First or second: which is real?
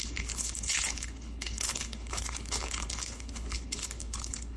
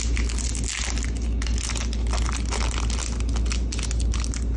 second